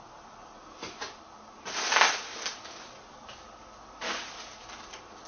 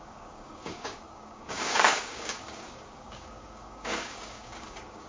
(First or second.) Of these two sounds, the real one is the first